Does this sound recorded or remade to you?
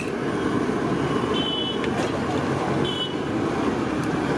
recorded